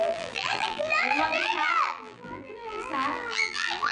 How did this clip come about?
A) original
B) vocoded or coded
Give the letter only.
B